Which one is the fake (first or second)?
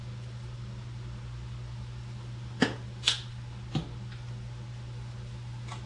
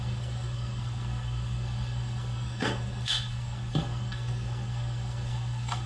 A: second